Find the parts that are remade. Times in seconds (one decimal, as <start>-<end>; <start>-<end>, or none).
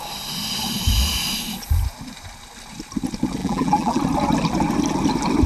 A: 3.4-4.0